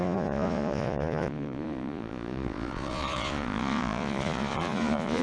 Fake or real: fake